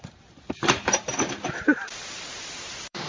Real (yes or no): no